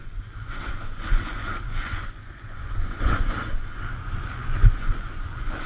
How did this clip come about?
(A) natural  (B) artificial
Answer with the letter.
B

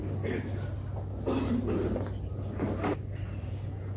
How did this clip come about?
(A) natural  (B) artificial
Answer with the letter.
A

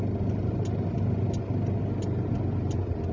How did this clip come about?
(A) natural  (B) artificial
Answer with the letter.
A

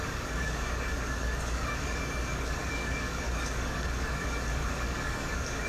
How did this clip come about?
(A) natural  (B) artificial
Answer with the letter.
B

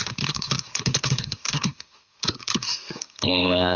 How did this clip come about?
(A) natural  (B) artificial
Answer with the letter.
B